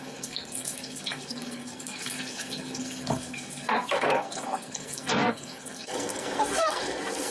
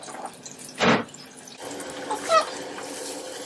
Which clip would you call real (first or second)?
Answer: second